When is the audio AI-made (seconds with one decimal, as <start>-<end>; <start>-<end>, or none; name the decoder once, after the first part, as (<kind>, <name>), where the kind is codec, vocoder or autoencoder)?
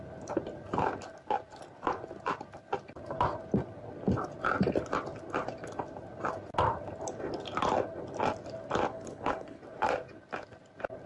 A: 8.9-9.6 (codec, HILCodec)